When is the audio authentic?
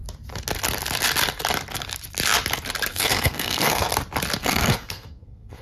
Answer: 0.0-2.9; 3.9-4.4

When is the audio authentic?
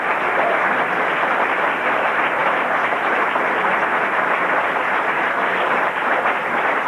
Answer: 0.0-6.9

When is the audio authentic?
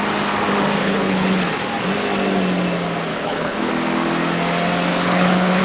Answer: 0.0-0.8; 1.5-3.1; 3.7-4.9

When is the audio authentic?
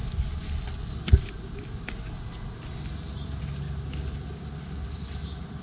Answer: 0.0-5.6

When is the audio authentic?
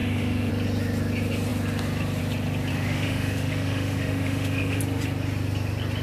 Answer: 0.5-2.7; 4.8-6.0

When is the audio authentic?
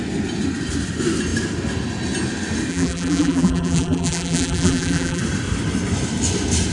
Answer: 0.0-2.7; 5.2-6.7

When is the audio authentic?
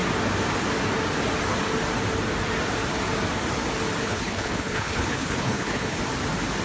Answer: 0.0-4.0; 6.0-6.6